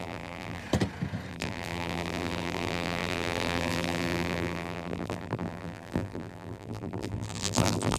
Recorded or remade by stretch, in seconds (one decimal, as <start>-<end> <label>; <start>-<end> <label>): 0.0-0.6 remade; 0.6-1.3 recorded; 1.3-8.0 remade